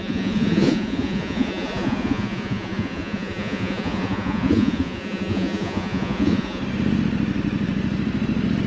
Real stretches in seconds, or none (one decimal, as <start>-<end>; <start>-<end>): 6.6-8.7